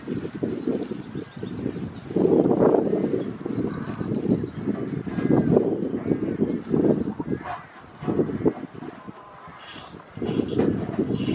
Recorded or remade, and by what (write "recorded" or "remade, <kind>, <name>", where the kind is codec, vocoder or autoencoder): recorded